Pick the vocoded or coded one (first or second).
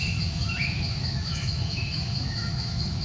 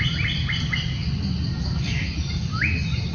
first